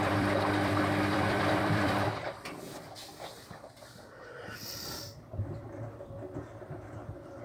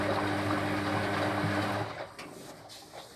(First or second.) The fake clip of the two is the first